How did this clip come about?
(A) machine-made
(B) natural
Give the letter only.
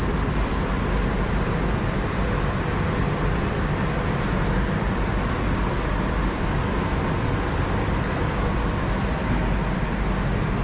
B